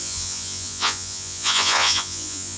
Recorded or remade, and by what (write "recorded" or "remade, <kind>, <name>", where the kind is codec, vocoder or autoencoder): remade, vocoder, Vocos